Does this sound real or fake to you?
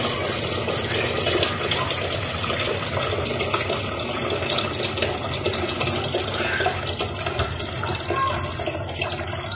real